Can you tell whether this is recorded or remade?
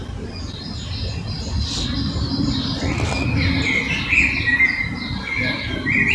recorded